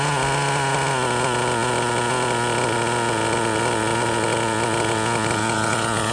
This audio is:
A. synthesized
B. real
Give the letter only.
B